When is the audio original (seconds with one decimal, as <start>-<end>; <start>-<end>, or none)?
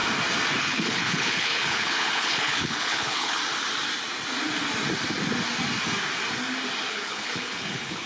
0.0-0.6; 3.4-6.9